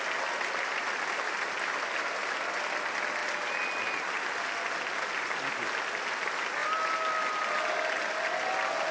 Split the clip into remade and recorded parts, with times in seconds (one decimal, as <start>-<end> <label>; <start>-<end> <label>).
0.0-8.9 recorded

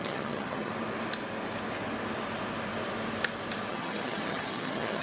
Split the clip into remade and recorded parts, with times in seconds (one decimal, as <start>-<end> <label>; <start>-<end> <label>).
0.0-0.7 remade; 0.7-3.7 recorded; 3.7-5.0 remade

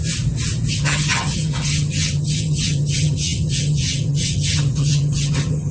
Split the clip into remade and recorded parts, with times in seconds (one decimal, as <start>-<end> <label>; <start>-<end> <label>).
0.0-0.7 recorded; 0.7-5.7 remade

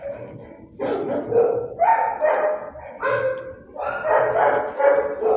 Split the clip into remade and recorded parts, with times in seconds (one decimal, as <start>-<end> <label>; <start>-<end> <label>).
0.0-5.4 recorded

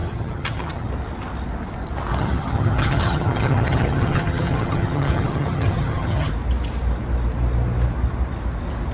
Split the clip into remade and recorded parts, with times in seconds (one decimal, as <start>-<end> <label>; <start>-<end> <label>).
0.0-0.9 remade; 0.9-2.1 recorded; 2.1-6.3 remade; 6.3-8.9 recorded

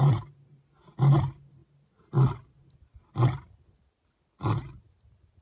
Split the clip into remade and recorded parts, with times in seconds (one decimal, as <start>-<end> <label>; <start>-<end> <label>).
0.0-5.4 recorded

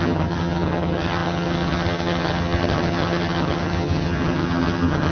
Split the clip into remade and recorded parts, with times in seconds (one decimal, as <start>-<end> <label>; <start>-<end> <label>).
0.0-5.1 remade